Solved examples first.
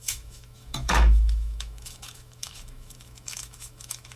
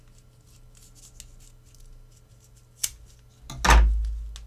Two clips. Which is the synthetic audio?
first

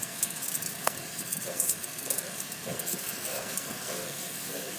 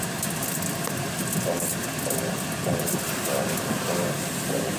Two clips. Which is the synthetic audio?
first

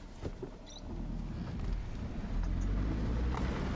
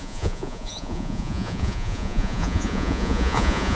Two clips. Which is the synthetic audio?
second